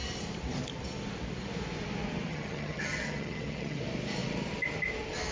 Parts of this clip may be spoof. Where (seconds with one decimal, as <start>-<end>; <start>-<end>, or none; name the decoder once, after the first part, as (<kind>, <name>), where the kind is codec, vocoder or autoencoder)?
2.3-3.8 (vocoder, HiFi-GAN)